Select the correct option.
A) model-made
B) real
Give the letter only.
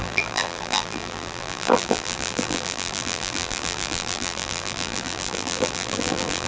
A